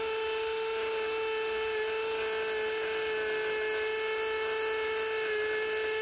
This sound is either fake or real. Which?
real